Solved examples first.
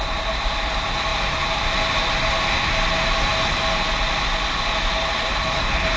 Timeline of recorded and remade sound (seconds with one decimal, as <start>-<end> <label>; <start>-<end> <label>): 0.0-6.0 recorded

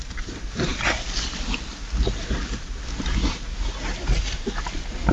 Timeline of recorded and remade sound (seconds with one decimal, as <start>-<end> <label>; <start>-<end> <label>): 0.0-5.1 recorded

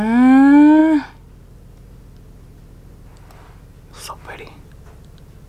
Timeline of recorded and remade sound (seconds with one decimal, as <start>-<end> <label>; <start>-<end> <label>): 0.0-5.5 recorded

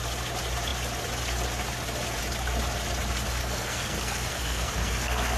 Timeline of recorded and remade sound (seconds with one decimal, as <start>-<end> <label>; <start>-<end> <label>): 0.0-3.4 recorded; 3.4-5.4 remade

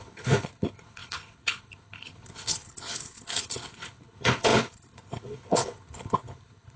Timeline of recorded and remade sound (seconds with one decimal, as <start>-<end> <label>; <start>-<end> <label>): 0.0-6.8 remade

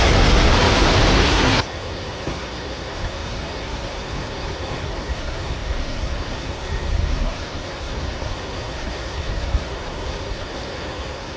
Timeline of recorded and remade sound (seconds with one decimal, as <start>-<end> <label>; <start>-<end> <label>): 0.0-0.5 remade; 0.5-1.1 recorded; 1.1-11.4 remade

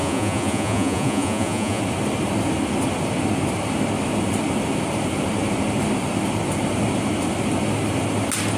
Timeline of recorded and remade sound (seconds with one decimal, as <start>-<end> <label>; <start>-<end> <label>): 0.0-1.8 remade; 1.8-8.6 recorded

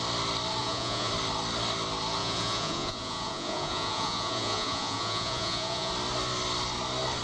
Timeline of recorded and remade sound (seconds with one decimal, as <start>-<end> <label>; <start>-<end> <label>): 0.0-0.6 recorded; 0.6-1.1 remade; 1.1-2.2 recorded; 2.2-5.9 remade; 5.9-7.2 recorded